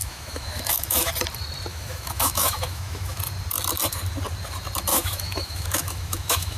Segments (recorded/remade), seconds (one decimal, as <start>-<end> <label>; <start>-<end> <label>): 0.0-1.1 remade; 1.1-1.7 recorded; 1.7-3.2 remade; 3.2-4.9 recorded; 4.9-6.6 remade

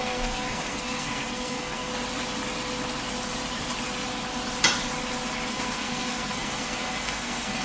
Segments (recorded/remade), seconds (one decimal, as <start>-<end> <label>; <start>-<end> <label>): 0.0-1.9 remade; 1.9-5.5 recorded; 5.5-7.6 remade